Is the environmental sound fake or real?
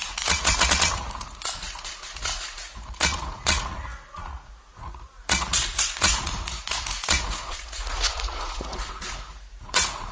fake